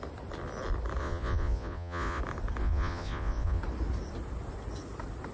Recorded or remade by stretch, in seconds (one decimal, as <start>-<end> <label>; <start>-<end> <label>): 0.0-1.0 recorded; 1.0-2.2 remade; 2.2-2.6 recorded; 2.6-3.6 remade; 3.6-5.3 recorded